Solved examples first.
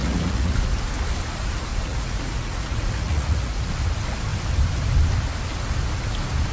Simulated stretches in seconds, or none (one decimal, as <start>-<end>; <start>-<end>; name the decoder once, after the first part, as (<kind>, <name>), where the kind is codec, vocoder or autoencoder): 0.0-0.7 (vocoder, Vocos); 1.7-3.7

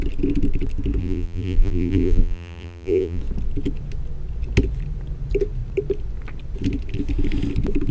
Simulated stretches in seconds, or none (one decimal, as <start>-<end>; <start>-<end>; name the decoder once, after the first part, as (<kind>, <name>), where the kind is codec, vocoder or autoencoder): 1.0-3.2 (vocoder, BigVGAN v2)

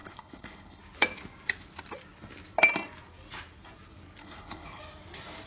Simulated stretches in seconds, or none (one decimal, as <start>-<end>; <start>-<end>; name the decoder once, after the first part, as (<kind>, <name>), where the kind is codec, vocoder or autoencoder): 0.0-0.8 (codec, HILCodec); 4.2-4.8